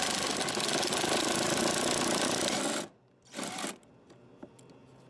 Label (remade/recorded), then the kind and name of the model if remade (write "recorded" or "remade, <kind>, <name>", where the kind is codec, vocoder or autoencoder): recorded